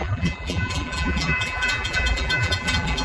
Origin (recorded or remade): remade